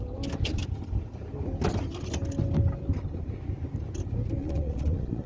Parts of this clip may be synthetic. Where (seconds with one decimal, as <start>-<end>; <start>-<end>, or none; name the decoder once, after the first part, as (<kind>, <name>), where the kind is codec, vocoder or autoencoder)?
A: 4.4-5.3 (vocoder, Vocos)